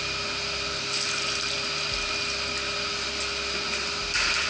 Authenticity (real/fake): real